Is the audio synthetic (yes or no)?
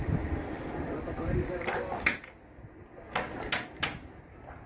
no